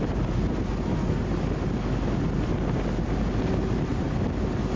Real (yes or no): yes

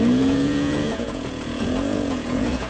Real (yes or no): no